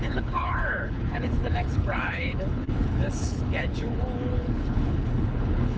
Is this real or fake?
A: fake